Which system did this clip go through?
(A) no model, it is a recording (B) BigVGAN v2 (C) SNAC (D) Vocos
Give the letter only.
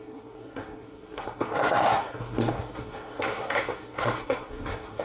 C